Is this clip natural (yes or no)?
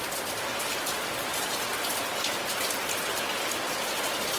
yes